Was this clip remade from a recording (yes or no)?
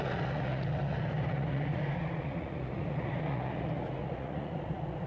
yes